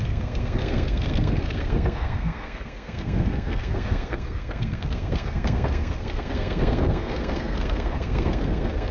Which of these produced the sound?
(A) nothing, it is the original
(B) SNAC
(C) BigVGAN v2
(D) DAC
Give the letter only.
B